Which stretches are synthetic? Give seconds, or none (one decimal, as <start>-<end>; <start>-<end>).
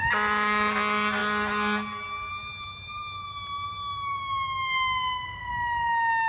none